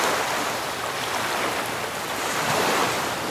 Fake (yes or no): no